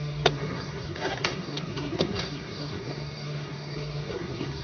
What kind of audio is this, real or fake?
fake